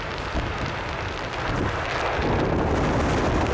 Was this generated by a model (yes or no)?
no